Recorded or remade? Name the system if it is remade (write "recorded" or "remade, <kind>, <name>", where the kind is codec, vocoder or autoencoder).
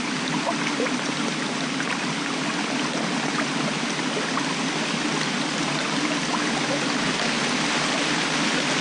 recorded